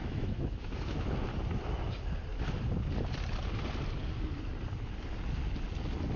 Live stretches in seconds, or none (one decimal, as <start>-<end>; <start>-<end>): 1.1-6.2